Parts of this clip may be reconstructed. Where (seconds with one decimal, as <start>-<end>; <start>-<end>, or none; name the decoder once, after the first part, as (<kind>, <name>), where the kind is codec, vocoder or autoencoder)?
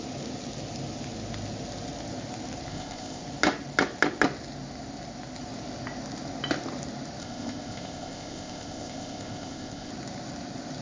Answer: 2.7-3.2 (codec, ZipCodec); 7.2-9.9